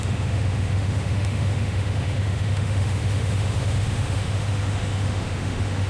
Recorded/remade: remade